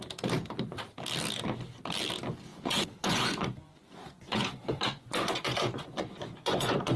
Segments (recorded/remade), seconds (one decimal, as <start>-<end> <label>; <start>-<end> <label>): 0.0-2.5 recorded; 2.5-7.0 remade